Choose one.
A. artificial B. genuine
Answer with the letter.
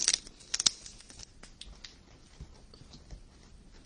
B